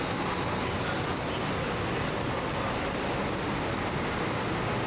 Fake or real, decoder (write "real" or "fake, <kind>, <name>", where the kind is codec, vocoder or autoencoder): real